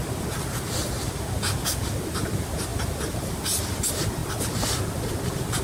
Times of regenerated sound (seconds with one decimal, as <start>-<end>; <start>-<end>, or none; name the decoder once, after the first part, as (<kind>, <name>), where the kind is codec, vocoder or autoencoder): none